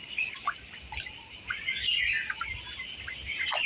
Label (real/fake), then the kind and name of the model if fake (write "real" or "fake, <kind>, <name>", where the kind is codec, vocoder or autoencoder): real